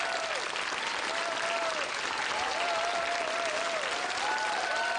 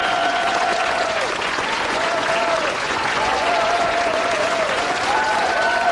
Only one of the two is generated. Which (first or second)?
second